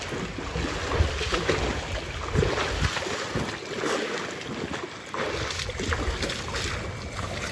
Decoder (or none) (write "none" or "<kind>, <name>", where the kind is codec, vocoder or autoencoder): none